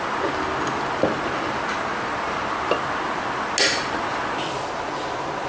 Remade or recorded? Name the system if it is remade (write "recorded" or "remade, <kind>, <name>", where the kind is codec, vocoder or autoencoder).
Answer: recorded